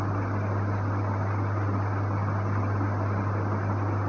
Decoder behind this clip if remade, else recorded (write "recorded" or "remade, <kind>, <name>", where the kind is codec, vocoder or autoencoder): recorded